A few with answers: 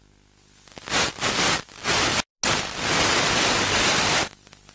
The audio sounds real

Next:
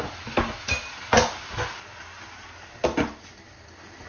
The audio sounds real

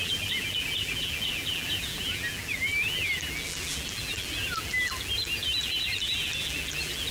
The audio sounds fake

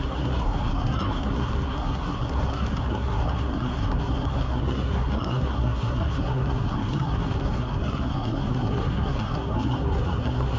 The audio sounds fake